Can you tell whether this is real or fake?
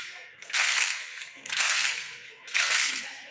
fake